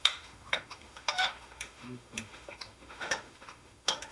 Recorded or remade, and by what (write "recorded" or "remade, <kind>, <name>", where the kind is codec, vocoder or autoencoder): remade, autoencoder, DAC-VAE